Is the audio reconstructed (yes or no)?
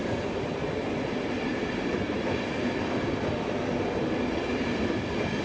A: no